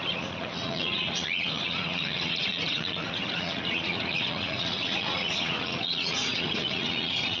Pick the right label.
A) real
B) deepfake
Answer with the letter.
B